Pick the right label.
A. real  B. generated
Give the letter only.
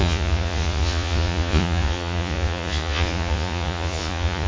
B